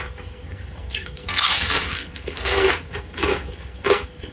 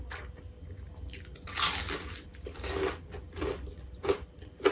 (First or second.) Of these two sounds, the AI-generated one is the first